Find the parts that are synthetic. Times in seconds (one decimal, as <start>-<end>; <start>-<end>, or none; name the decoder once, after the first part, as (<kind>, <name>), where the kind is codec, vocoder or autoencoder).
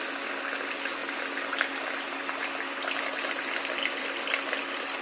none